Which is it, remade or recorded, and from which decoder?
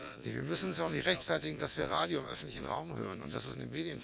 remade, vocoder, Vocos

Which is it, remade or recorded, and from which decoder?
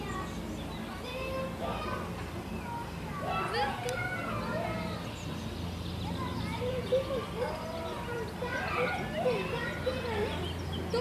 recorded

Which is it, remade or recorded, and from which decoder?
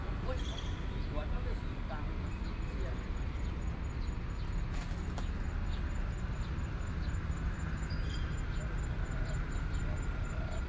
recorded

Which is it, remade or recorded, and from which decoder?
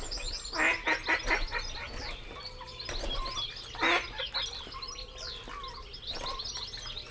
recorded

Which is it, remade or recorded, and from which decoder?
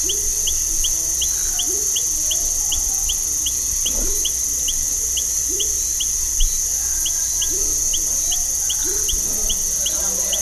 recorded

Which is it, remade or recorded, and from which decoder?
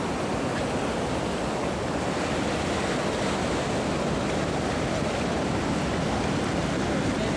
recorded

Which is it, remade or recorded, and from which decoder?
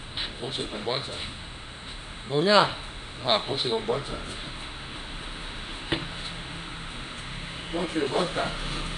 remade, autoencoder, DAC-VAE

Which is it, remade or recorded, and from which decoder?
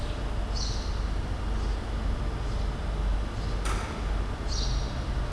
recorded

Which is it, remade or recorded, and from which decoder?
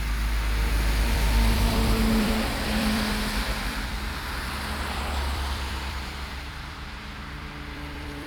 remade, vocoder, BigVGAN v2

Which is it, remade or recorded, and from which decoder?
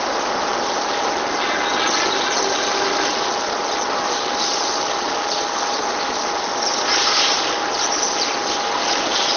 recorded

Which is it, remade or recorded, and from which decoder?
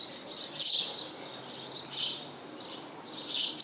recorded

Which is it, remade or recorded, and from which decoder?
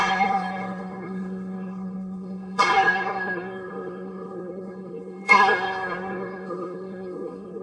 remade, codec, SNAC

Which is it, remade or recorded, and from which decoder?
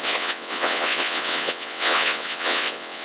remade, vocoder, WaveNeXt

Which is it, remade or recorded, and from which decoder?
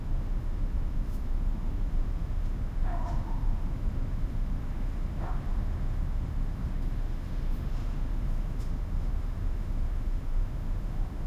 remade, autoencoder, DAC-VAE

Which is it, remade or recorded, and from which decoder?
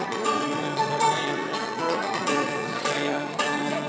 remade, vocoder, Vocos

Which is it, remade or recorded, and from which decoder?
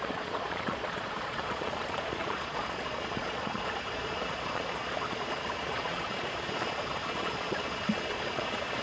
remade, vocoder, Vocos